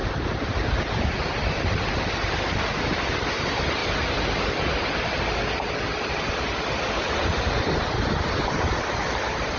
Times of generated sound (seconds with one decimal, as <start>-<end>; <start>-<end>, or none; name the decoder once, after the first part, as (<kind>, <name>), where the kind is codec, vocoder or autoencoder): none